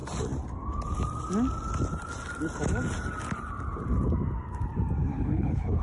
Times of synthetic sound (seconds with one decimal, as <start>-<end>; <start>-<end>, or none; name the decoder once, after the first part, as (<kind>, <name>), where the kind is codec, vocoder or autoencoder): 5.1-5.8 (codec, HILCodec)